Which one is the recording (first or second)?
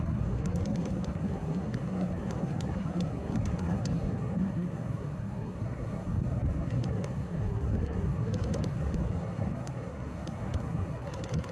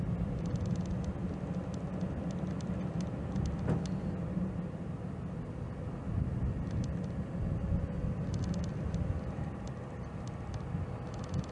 second